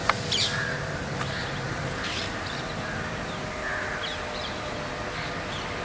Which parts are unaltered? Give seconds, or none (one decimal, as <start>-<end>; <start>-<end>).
2.7-5.8